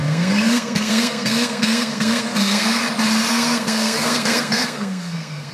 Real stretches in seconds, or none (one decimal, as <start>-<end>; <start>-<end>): 2.8-3.3